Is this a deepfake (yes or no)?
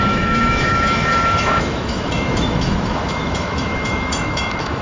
yes